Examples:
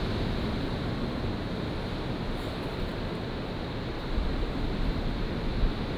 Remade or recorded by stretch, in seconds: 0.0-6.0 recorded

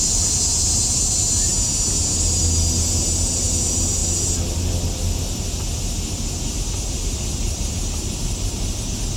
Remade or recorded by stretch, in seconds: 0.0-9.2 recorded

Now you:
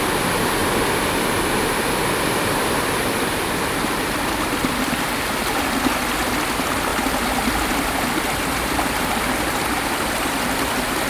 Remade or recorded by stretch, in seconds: 0.0-11.1 recorded

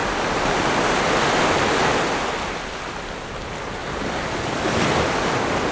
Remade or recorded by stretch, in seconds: 0.0-5.7 recorded

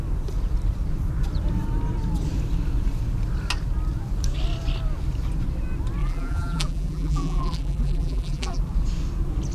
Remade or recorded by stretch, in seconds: 0.0-6.0 recorded; 6.0-8.6 remade; 8.6-9.5 recorded

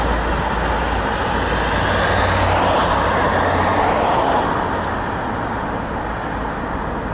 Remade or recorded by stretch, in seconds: 0.0-7.1 recorded

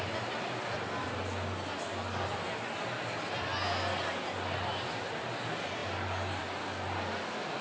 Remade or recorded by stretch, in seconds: 0.0-7.6 recorded

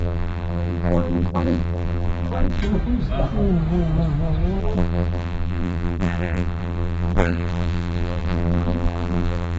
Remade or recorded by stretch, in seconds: 0.0-2.6 remade; 2.6-4.6 recorded; 4.6-9.6 remade